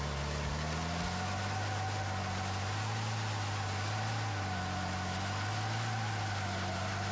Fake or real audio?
real